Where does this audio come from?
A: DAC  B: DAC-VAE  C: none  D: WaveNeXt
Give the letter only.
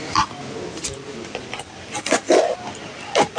C